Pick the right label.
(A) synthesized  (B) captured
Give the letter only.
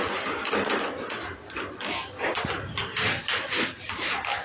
B